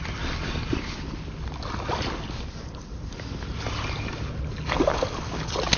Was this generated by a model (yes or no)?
no